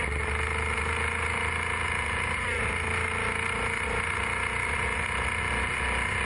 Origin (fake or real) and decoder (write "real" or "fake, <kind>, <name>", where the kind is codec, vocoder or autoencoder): real